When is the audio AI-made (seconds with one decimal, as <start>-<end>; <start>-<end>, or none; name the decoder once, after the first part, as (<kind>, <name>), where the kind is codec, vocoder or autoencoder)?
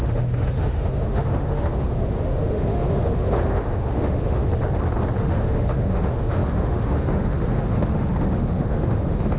0.0-4.5 (autoencoder, DAC-VAE); 5.2-9.4